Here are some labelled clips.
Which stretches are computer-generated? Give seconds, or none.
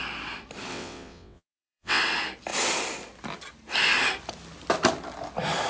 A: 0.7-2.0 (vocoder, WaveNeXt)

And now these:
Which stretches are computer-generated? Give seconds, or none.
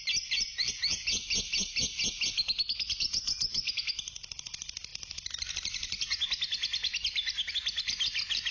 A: none